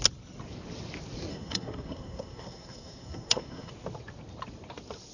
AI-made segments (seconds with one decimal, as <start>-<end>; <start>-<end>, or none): 1.3-3.7